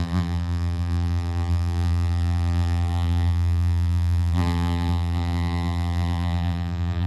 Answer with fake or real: fake